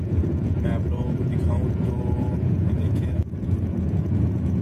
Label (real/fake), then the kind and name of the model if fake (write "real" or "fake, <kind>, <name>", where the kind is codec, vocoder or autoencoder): fake, vocoder, Vocos